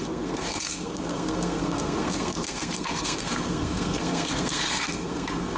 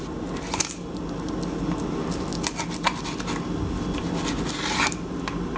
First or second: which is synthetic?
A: first